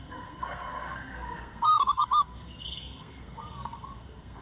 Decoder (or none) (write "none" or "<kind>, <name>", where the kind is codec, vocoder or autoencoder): codec, SNAC